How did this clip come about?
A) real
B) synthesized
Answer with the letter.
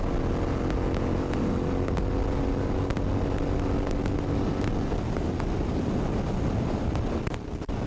A